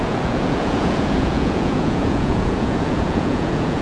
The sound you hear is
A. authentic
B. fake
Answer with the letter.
B